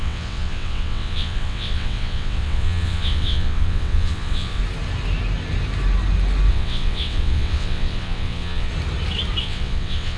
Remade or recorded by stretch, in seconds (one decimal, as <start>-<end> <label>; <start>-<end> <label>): 0.0-4.6 remade; 4.6-6.5 recorded; 6.5-8.7 remade; 8.7-9.4 recorded; 9.4-10.2 remade